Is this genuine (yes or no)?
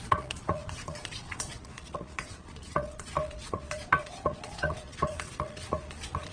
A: no